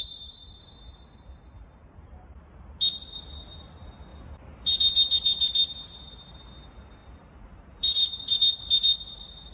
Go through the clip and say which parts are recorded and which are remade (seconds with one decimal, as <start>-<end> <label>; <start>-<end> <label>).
0.0-4.1 recorded; 4.1-4.8 remade; 4.8-7.0 recorded; 7.0-8.6 remade; 8.6-9.5 recorded